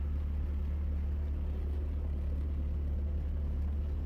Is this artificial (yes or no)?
no